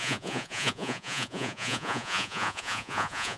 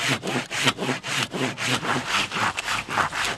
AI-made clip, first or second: first